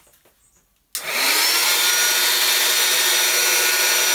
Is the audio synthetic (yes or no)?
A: no